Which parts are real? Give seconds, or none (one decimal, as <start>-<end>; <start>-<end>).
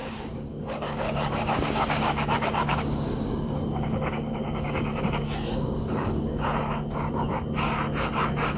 5.0-5.5; 6.4-8.6